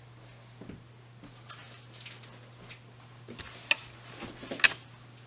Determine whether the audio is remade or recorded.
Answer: recorded